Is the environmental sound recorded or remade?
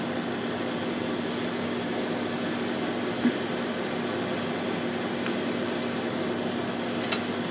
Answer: recorded